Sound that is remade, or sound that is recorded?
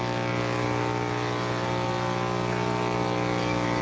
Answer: recorded